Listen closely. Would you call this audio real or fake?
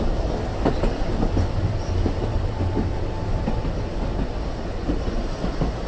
real